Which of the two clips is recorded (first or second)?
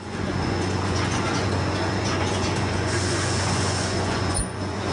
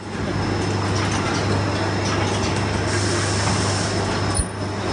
second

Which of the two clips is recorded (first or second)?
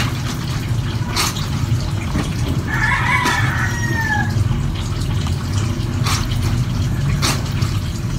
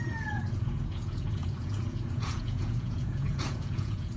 first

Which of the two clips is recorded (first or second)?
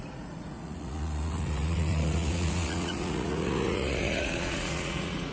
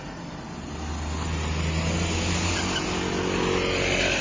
second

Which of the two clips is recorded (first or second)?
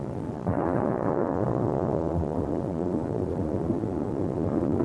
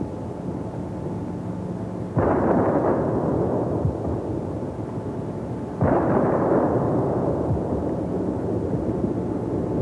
second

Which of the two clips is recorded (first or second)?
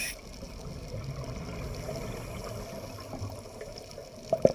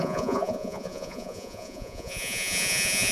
first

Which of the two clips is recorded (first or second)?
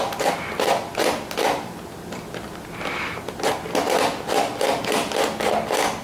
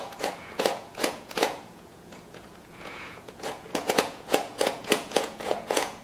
first